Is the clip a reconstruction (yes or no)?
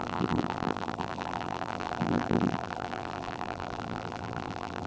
yes